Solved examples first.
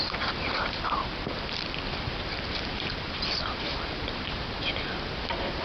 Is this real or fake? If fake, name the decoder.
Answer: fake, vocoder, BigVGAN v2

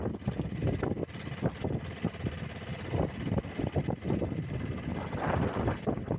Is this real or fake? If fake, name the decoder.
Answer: real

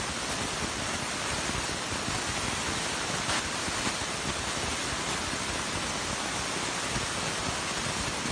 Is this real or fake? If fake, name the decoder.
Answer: real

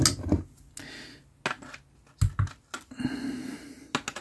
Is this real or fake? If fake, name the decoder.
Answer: real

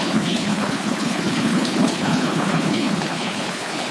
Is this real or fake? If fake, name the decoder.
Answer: fake, codec, HILCodec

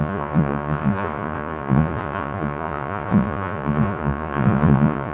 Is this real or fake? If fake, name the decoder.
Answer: fake, vocoder, Vocos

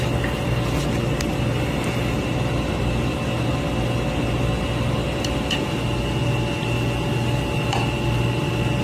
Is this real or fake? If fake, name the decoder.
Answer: real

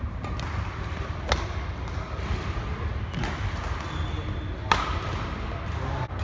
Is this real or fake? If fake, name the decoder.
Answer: real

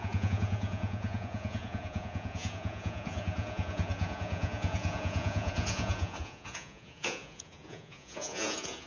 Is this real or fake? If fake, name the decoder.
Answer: fake, vocoder, Vocos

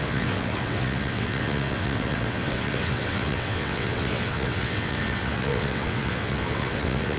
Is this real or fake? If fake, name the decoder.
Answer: fake, vocoder, WaveNeXt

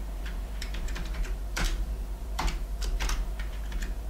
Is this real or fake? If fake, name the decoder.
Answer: fake, vocoder, BigVGAN v2